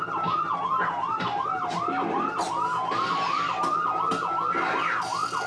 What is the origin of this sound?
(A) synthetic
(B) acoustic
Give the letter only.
B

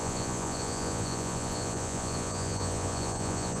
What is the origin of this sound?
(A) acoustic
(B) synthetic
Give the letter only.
B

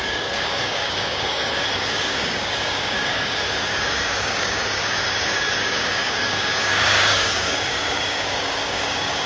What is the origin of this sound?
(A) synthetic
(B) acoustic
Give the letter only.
A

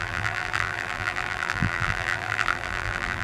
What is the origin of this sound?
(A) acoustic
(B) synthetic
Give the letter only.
B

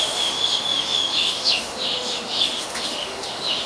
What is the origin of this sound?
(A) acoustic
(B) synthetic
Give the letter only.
B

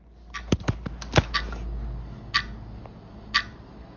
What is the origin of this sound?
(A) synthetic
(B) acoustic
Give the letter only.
B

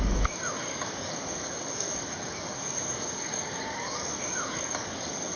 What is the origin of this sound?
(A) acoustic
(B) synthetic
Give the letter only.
B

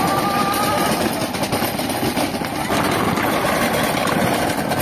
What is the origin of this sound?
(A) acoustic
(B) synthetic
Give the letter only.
A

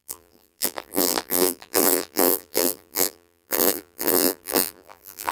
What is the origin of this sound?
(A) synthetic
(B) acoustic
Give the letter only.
A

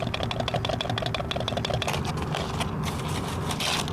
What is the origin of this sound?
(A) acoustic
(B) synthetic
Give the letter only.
A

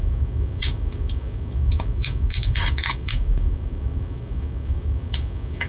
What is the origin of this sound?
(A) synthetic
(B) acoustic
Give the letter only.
A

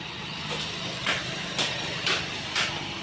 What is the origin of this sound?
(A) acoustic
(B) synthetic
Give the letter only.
A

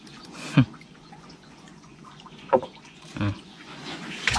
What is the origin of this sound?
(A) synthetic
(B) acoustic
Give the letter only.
A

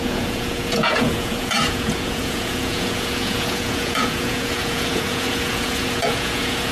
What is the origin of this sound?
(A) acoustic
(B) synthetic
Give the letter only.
B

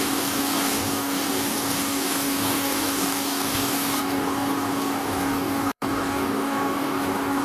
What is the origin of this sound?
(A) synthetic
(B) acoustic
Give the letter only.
A